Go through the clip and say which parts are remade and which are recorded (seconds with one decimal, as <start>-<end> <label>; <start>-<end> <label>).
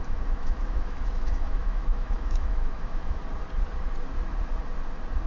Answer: 0.0-3.2 remade; 3.2-5.3 recorded